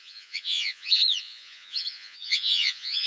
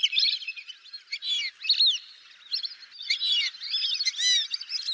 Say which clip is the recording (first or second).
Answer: second